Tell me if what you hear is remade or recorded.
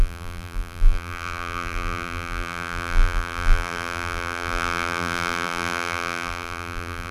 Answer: remade